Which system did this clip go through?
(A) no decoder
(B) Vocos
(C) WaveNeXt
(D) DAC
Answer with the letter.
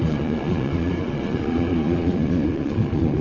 B